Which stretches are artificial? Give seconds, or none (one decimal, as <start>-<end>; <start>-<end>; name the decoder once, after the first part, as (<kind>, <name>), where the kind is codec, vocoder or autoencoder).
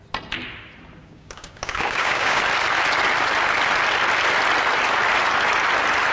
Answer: 1.0-2.4 (codec, DAC)